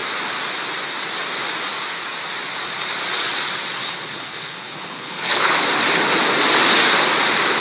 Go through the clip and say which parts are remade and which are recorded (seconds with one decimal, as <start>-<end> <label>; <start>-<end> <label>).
0.0-3.8 recorded; 3.8-5.6 remade; 5.6-7.6 recorded